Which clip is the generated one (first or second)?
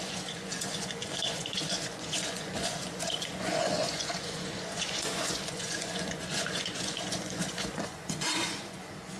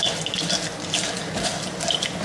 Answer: first